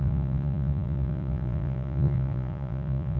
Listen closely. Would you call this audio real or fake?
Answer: fake